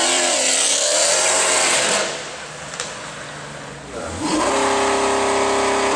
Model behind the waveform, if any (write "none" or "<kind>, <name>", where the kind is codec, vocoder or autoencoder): none